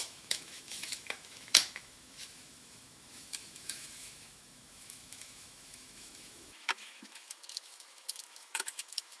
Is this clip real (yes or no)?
no